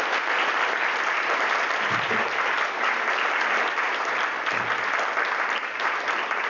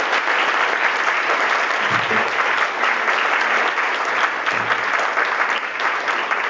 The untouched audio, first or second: second